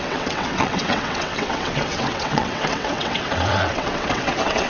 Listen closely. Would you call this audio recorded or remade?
remade